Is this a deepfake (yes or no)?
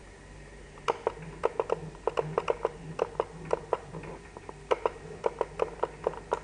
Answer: no